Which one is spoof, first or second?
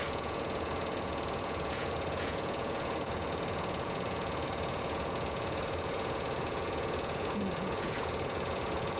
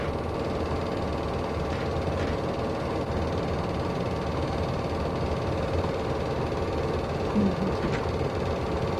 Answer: first